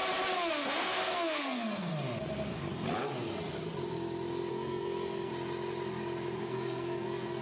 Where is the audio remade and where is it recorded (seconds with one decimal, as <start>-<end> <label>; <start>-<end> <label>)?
0.0-0.5 recorded; 0.5-1.9 remade; 1.9-4.5 recorded; 4.5-5.3 remade; 5.3-6.4 recorded; 6.4-7.4 remade

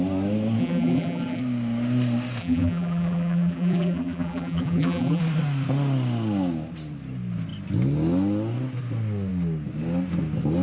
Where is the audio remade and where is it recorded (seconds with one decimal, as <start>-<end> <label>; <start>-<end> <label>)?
0.0-0.6 recorded; 0.6-1.4 remade; 1.4-2.4 recorded; 2.4-5.2 remade; 5.2-10.6 recorded